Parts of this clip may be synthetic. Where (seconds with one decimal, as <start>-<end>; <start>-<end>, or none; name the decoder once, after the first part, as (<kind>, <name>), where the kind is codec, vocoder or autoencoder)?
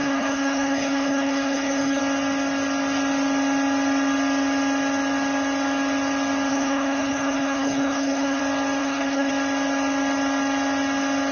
0.0-2.0 (codec, HILCodec); 6.5-8.4; 8.8-9.3